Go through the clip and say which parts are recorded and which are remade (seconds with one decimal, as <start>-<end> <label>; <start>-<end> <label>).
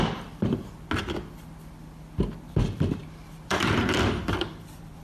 0.0-3.0 recorded; 3.0-5.0 remade